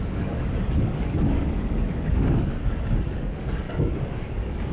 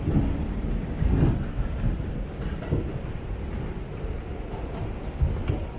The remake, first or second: first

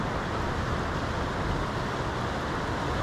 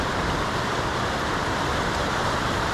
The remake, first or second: second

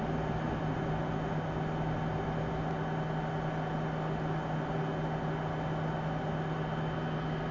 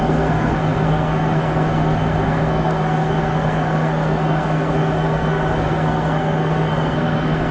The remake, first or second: second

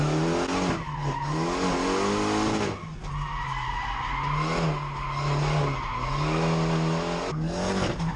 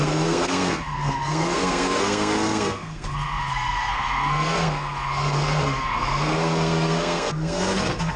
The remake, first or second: second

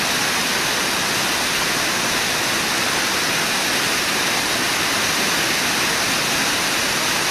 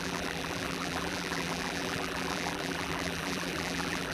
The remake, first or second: second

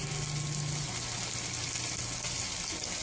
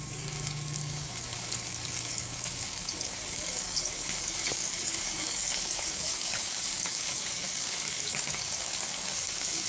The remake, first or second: second